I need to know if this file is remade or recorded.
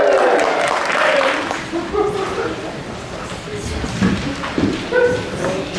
recorded